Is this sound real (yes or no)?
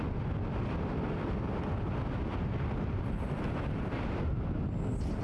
yes